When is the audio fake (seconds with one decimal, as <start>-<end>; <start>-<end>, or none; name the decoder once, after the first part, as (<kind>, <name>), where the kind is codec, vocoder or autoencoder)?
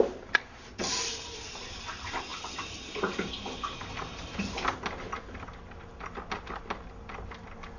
none